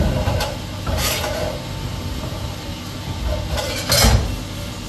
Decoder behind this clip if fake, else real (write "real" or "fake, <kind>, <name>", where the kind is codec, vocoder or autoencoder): real